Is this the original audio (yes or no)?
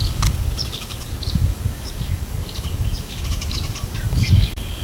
no